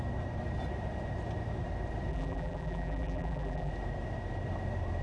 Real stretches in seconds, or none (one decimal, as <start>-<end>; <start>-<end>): 0.0-2.1; 3.7-5.0